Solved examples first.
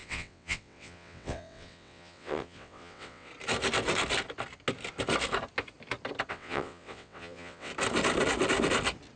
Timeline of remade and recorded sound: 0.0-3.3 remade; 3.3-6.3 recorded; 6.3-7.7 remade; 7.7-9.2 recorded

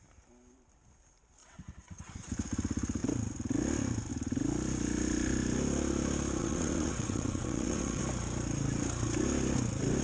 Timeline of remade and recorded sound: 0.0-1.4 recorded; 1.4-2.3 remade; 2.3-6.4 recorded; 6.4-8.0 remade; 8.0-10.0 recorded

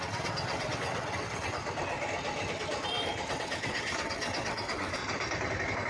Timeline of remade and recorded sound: 0.0-1.6 remade; 1.6-3.3 recorded; 3.3-5.0 remade; 5.0-5.9 recorded

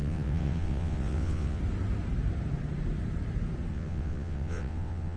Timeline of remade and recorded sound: 0.0-1.6 remade; 1.6-3.7 recorded; 3.7-5.2 remade

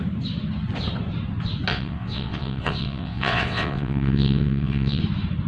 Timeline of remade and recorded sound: 0.0-1.7 recorded; 1.7-5.0 remade; 5.0-5.5 recorded

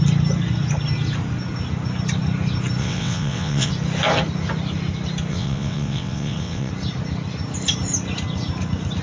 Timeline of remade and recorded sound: 0.0-2.8 recorded; 2.8-3.7 remade; 3.7-5.3 recorded; 5.3-6.7 remade; 6.7-9.0 recorded

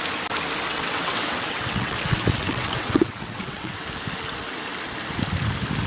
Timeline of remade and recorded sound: 0.0-0.7 recorded; 0.7-3.8 remade; 3.8-5.9 recorded